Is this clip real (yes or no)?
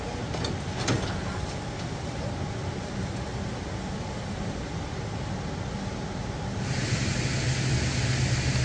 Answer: yes